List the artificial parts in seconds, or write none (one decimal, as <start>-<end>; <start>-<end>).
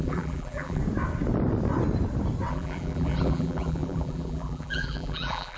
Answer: 0.0-0.8; 2.5-5.6